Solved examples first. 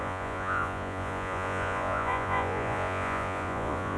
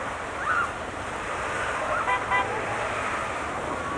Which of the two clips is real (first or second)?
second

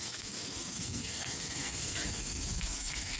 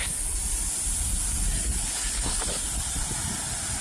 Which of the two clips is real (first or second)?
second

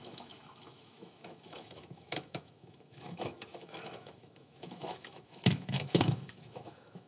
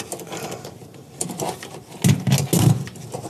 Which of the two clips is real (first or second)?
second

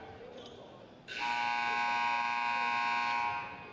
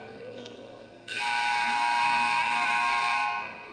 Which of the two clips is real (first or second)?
first